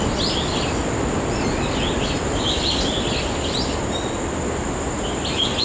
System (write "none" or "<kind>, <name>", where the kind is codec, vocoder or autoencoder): none